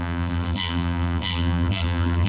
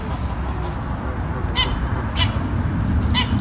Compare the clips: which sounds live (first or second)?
second